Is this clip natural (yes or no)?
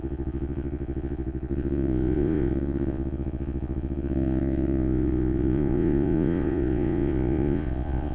no